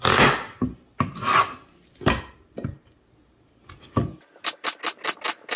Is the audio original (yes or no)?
yes